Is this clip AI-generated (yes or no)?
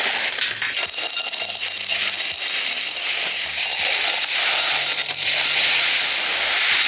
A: no